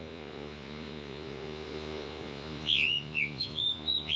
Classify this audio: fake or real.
fake